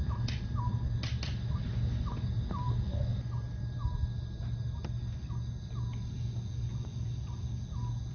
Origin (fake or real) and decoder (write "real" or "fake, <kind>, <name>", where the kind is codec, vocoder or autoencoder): real